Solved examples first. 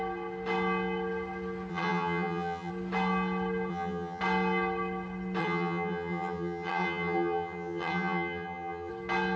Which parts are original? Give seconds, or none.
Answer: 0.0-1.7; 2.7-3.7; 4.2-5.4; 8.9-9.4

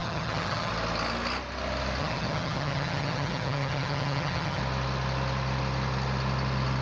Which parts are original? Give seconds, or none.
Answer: 0.7-2.0; 4.6-6.8